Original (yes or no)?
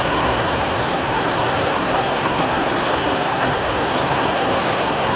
no